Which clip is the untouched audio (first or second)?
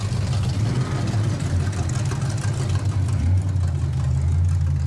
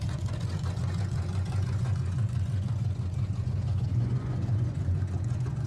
first